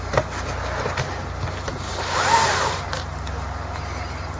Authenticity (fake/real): real